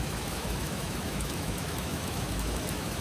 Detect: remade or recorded remade